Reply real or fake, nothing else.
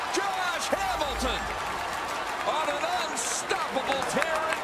real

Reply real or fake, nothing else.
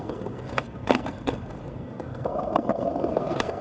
fake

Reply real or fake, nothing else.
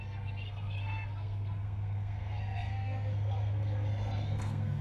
fake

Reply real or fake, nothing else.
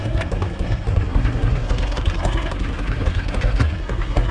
fake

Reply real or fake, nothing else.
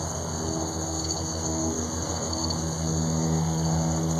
fake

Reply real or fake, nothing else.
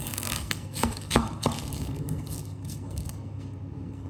fake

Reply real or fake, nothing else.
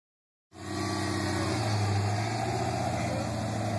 real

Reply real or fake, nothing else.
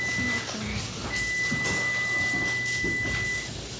real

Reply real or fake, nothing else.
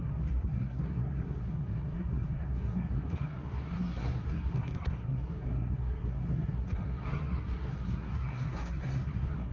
fake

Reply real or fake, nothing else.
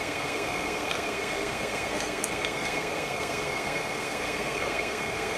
fake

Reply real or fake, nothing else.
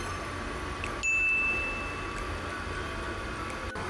real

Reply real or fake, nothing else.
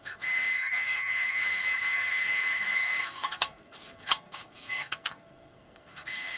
fake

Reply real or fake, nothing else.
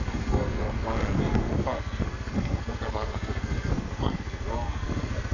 fake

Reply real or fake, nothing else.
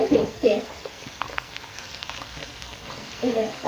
fake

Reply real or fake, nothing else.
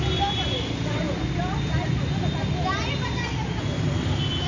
real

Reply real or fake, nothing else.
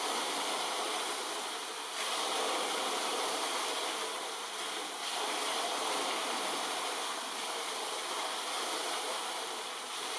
real